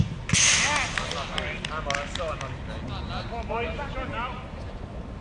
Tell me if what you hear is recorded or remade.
recorded